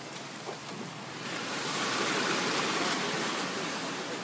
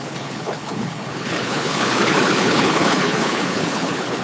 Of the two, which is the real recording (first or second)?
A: first